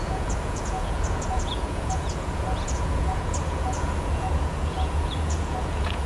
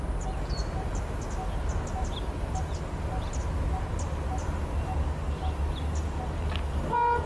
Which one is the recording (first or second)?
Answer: second